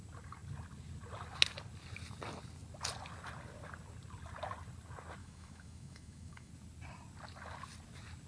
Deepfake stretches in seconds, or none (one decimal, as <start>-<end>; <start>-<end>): 5.2-6.5